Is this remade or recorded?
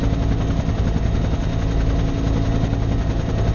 recorded